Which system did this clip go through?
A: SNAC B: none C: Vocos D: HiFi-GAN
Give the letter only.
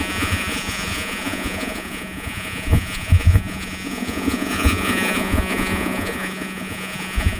C